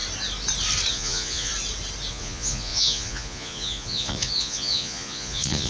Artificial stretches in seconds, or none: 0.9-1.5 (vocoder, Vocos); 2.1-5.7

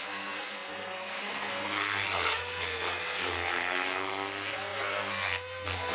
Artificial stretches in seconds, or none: 0.0-5.9 (codec, SNAC)

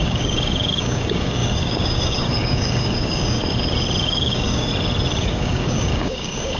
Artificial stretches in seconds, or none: 0.0-3.4 (codec, DAC); 4.0-4.7; 5.2-6.6

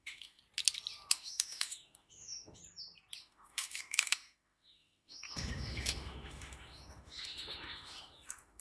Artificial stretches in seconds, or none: 0.0-0.4 (autoencoder, DAC-VAE); 1.1-2.6; 3.2-8.6

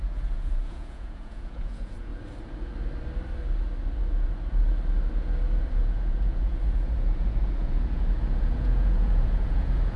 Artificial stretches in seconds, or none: 0.0-2.1 (vocoder, Vocos); 5.6-10.0

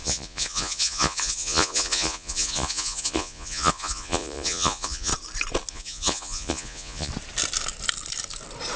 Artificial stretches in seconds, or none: 0.0-5.1 (vocoder, Vocos); 5.7-7.1

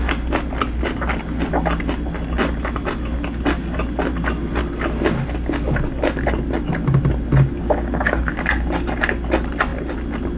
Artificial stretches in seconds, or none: 7.6-8.3 (codec, DAC)